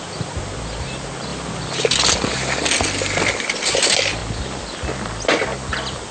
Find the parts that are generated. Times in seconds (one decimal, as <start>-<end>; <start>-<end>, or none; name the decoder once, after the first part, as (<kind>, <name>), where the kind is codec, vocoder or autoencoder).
none